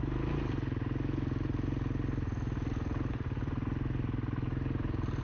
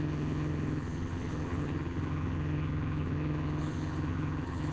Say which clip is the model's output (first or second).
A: second